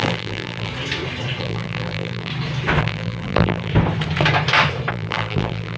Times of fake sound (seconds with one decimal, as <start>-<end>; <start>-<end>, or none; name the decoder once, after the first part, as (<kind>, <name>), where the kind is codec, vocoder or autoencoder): 0.0-0.7 (vocoder, BigVGAN v2); 1.4-2.3; 2.8-3.7; 4.9-5.8